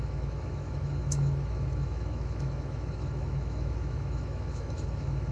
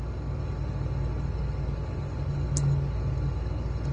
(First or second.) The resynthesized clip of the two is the first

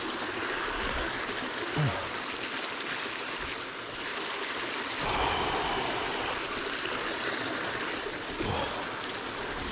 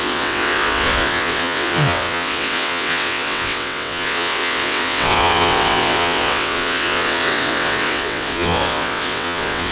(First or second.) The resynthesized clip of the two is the second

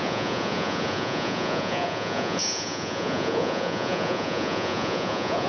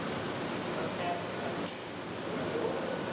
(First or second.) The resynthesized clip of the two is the first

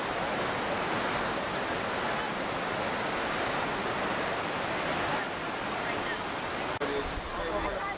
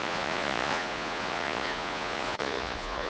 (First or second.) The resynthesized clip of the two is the second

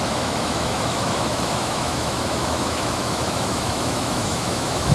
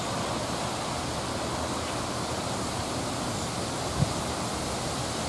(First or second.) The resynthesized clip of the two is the first